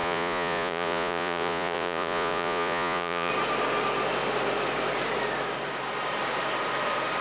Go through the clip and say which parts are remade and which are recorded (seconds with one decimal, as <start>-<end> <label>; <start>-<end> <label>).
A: 0.0-3.3 remade; 3.3-7.2 recorded